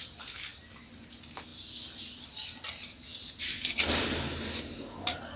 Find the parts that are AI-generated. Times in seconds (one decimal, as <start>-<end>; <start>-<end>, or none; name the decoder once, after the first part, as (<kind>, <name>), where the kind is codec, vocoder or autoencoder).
none